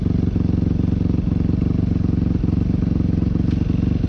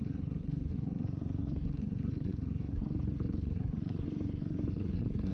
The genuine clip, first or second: first